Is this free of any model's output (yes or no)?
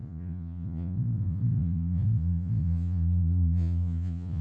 no